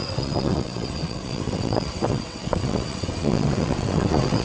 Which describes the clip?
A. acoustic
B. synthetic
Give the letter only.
B